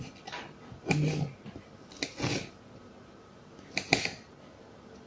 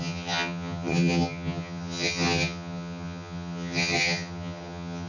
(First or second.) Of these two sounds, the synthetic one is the second